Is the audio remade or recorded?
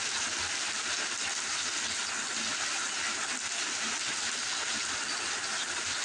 recorded